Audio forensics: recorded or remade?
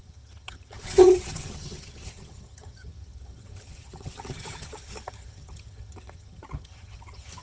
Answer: remade